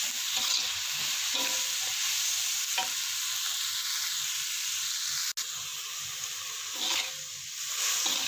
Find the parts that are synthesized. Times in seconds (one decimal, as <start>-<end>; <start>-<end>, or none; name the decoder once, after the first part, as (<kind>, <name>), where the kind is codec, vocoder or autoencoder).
5.7-7.8 (vocoder, BigVGAN v2)